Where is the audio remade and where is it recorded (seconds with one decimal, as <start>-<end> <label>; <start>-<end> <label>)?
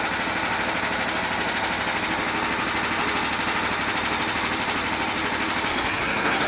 0.0-5.7 recorded; 5.7-6.5 remade